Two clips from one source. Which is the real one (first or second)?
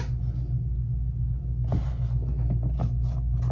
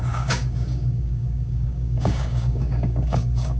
first